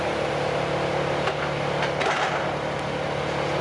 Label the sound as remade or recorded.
recorded